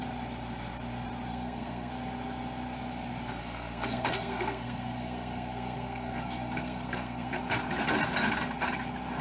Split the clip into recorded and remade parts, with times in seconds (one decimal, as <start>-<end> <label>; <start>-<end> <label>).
0.0-1.3 recorded; 1.3-1.9 remade; 1.9-3.4 recorded; 3.4-7.3 remade; 7.3-9.2 recorded